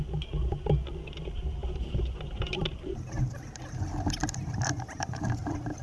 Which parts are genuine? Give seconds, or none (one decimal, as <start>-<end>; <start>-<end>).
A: 0.0-1.6; 3.5-4.2